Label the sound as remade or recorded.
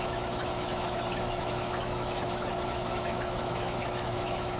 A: remade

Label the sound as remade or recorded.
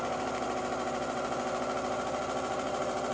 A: recorded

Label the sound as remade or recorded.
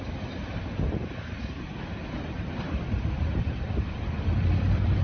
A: remade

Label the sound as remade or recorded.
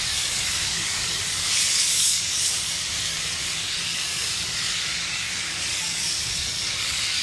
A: remade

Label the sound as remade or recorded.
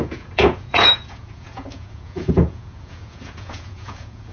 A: remade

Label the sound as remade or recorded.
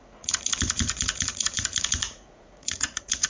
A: remade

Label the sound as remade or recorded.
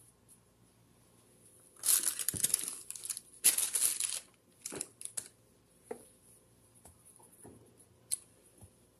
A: recorded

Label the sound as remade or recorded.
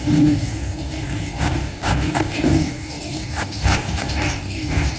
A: remade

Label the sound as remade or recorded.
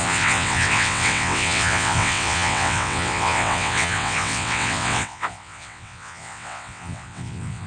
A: remade